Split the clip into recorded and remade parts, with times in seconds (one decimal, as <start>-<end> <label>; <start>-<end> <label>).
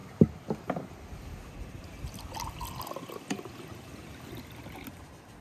0.0-5.4 recorded